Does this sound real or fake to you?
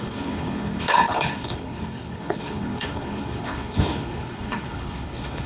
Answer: fake